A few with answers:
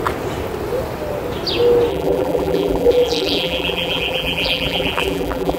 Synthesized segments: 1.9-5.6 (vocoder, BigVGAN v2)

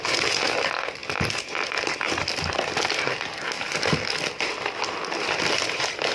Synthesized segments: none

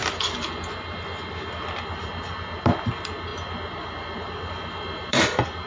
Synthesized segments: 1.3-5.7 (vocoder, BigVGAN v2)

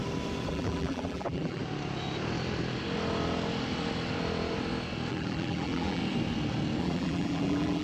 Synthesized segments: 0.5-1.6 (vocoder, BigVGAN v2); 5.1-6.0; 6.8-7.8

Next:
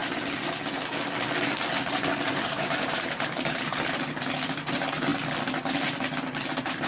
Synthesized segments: 2.3-5.1 (vocoder, BigVGAN v2); 6.4-6.9

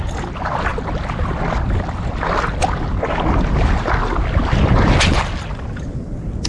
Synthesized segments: none

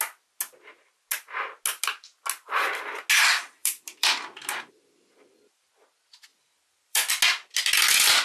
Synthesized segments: 3.6-5.7 (vocoder, BigVGAN v2); 6.3-7.1